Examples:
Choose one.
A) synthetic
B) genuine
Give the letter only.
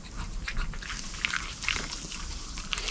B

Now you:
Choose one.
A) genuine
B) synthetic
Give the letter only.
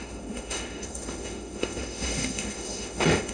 B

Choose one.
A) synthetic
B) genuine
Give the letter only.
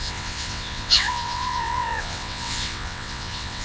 A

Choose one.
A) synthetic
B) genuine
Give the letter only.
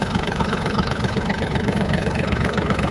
A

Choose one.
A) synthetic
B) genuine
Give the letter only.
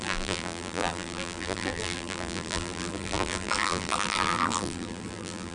A